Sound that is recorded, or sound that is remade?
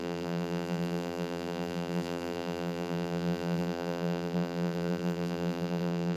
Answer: remade